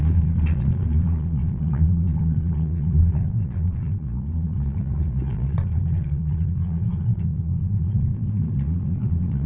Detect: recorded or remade remade